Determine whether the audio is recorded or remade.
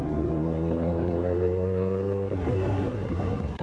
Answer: remade